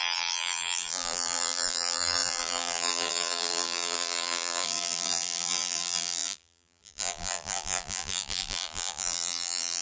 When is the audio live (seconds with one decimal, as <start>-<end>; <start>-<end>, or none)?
none